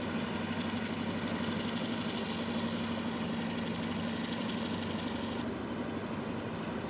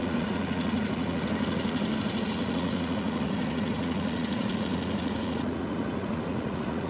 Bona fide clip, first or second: first